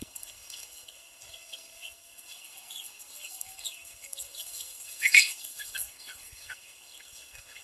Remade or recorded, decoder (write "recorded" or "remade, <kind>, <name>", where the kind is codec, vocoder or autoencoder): remade, codec, SNAC